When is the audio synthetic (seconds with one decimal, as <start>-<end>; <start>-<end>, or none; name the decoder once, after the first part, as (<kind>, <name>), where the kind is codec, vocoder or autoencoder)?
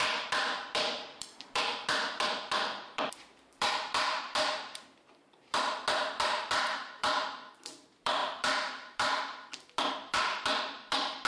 0.0-11.3 (vocoder, BigVGAN v2)